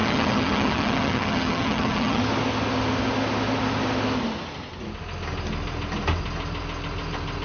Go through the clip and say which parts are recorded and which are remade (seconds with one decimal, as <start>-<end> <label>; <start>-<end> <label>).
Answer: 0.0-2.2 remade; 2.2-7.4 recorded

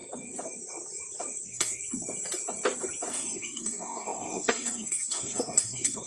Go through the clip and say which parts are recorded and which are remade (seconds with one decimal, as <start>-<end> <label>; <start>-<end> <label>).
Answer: 0.0-1.4 recorded; 1.4-1.8 remade; 1.8-3.1 recorded; 3.1-6.1 remade

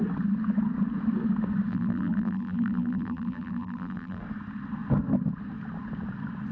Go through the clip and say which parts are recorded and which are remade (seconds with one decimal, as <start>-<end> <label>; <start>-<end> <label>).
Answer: 0.0-1.7 recorded; 1.7-4.2 remade; 4.2-6.5 recorded